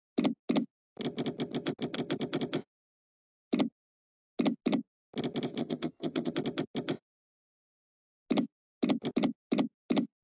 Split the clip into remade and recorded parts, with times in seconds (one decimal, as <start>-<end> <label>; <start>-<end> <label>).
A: 0.0-5.6 recorded; 5.6-6.3 remade; 6.3-10.2 recorded